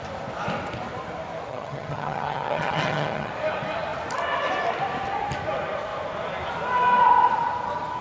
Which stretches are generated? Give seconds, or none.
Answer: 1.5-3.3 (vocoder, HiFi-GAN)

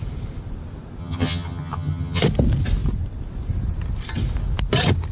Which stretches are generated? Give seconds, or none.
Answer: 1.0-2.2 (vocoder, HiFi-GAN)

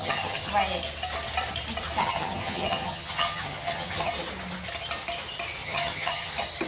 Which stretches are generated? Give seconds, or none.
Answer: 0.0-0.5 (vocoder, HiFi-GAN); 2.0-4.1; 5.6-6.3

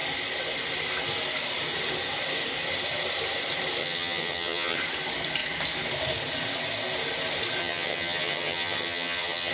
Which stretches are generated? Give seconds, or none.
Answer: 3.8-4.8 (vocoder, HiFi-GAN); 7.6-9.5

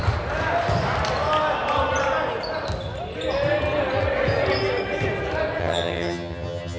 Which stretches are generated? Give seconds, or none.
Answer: 5.6-6.8 (vocoder, HiFi-GAN)

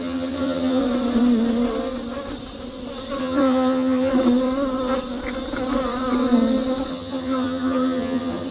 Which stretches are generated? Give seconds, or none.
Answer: 0.0-0.8 (vocoder, HiFi-GAN); 3.2-4.1; 6.9-8.5